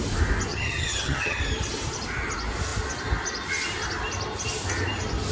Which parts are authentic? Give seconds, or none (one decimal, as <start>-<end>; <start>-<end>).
0.0-0.5; 1.4-5.3